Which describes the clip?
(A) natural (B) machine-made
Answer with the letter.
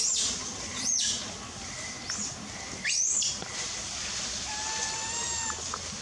A